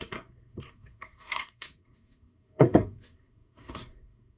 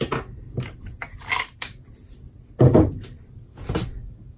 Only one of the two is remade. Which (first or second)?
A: first